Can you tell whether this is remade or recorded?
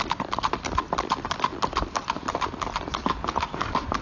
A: recorded